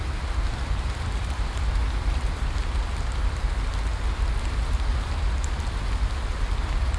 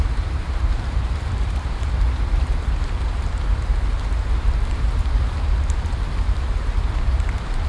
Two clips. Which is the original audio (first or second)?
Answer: first